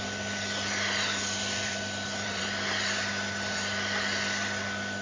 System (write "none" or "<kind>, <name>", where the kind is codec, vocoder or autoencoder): vocoder, BigVGAN v2